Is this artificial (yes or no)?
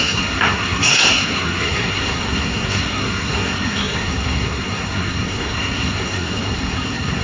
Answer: yes